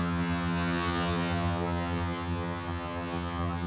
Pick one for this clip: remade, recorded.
remade